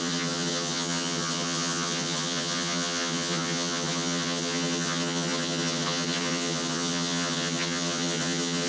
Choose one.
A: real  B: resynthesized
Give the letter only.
B